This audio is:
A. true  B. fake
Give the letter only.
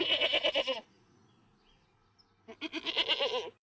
A